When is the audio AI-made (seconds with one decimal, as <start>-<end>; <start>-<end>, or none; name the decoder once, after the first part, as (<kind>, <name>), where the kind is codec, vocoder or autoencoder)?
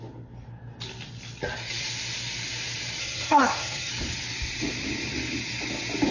3.0-3.9 (codec, SNAC)